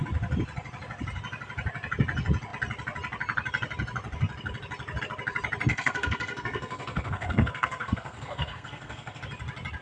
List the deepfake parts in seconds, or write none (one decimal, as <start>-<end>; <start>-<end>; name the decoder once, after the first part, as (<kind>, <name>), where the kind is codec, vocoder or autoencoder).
5.7-9.2 (codec, SNAC)